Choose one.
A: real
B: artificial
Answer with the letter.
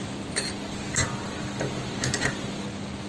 A